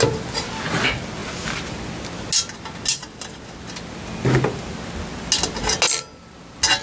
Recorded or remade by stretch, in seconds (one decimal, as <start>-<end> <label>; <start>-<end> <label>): 0.0-6.8 recorded